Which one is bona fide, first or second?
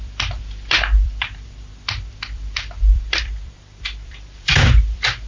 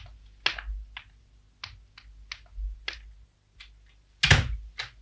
second